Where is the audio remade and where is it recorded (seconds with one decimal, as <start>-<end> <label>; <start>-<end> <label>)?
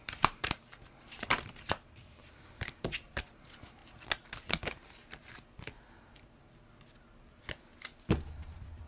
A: 0.0-3.8 remade; 3.8-8.9 recorded